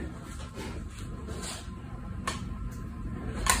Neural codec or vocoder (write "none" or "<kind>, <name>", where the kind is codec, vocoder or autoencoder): none